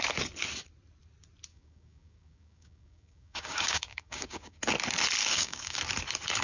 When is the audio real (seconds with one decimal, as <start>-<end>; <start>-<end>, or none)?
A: 0.0-1.5; 4.6-5.2; 5.8-6.4